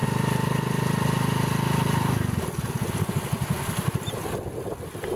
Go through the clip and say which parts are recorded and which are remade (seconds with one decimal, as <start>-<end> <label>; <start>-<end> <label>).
0.0-5.2 recorded